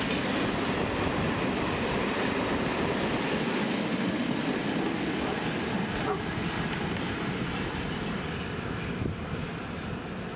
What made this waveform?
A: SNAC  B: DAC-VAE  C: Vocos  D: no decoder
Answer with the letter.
D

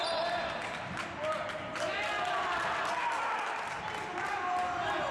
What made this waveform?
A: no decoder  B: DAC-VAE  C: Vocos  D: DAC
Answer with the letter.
A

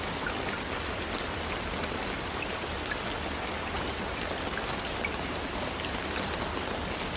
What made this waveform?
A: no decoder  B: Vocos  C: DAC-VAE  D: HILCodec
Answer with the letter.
A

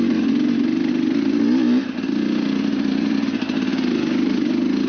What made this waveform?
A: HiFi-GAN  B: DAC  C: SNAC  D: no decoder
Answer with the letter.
D